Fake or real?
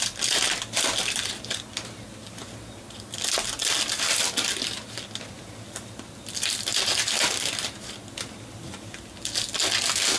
real